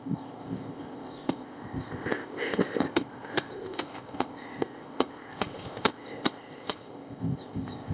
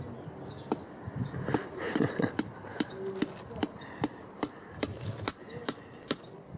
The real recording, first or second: second